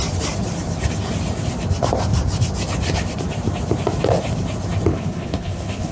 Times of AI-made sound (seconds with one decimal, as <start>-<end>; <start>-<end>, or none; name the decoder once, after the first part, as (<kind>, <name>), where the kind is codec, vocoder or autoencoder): 4.9-5.9 (codec, HILCodec)